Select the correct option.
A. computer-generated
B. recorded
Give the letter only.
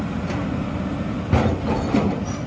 B